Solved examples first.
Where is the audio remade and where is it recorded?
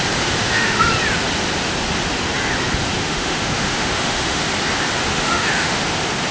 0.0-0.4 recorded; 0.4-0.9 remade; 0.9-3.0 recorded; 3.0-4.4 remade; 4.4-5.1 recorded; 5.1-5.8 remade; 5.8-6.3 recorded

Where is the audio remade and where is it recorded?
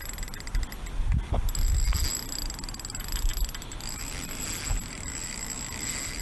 0.0-6.2 recorded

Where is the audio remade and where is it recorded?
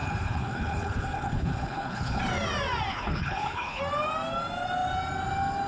0.0-2.2 remade; 2.2-2.9 recorded; 2.9-3.8 remade; 3.8-5.7 recorded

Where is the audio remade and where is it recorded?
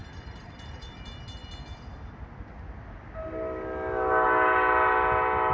0.0-1.0 remade; 1.0-5.5 recorded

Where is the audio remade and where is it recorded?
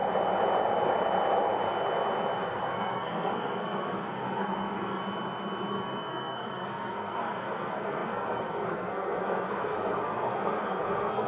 0.0-2.4 recorded; 2.4-5.0 remade; 5.0-5.7 recorded; 5.7-11.3 remade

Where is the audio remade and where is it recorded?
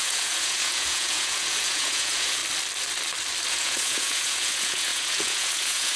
0.0-2.4 remade; 2.4-3.5 recorded; 3.5-6.0 remade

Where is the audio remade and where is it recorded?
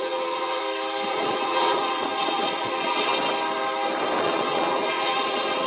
0.0-0.6 remade; 0.6-1.1 recorded; 1.1-3.1 remade; 3.1-4.2 recorded; 4.2-5.7 remade